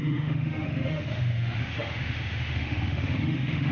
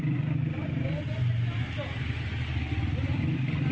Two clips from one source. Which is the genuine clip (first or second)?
second